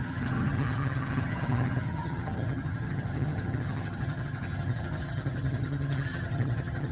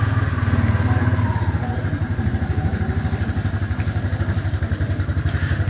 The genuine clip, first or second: second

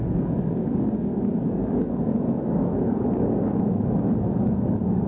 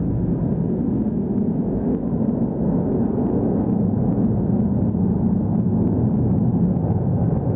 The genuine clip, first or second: second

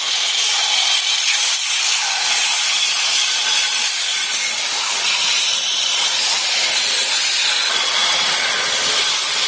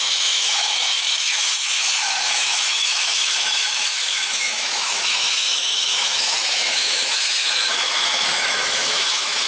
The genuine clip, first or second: first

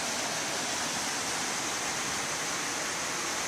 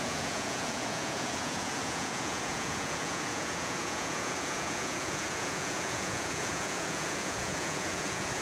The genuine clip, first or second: first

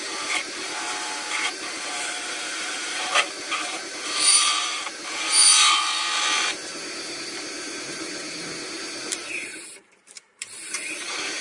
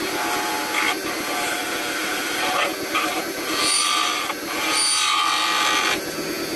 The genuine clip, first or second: second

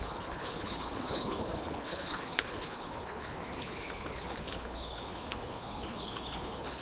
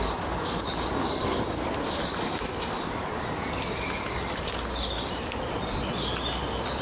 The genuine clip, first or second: second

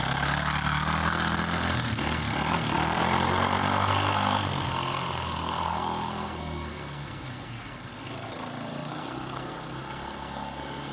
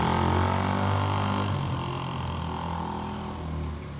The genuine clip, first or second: second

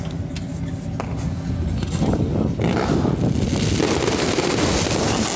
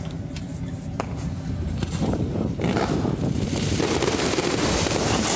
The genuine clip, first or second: first